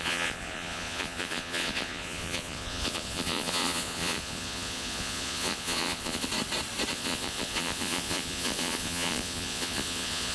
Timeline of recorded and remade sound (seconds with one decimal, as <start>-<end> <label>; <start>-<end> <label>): 0.0-6.3 remade; 6.3-6.9 recorded; 6.9-10.3 remade